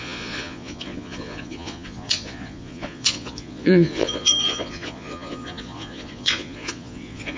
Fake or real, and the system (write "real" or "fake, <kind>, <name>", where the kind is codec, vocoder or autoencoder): fake, vocoder, Vocos